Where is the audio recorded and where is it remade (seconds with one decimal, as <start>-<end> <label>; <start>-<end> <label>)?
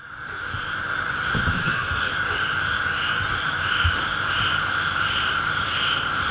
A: 0.0-1.6 recorded; 1.6-2.1 remade; 2.1-6.3 recorded